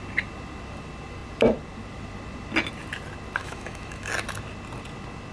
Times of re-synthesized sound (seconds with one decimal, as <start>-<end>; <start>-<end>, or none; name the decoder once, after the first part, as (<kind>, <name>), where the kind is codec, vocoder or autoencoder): 3.4-4.1 (autoencoder, DAC-VAE)